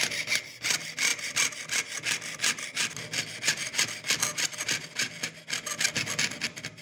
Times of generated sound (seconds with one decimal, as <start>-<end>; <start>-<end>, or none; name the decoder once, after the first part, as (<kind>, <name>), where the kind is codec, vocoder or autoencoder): none